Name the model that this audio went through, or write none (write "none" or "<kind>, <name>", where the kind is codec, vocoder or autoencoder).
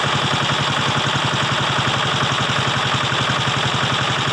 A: none